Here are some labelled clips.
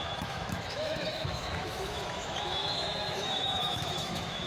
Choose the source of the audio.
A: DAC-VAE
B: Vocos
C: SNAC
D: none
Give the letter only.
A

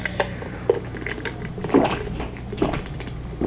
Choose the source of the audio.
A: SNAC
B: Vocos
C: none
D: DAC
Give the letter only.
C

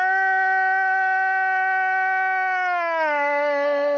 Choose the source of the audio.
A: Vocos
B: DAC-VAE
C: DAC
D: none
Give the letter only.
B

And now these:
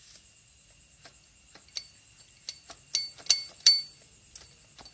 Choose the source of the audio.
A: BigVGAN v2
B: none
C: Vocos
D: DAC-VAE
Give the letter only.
B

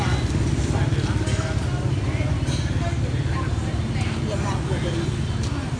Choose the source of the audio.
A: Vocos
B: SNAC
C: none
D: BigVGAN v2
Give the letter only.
C